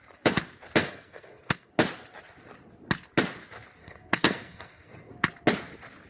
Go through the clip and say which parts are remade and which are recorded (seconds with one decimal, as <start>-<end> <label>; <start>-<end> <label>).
0.0-0.8 recorded; 0.8-1.7 remade; 1.7-3.8 recorded; 3.8-5.1 remade; 5.1-6.1 recorded